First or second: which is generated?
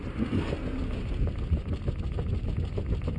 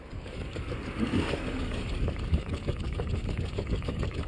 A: second